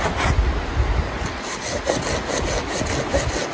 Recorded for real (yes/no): yes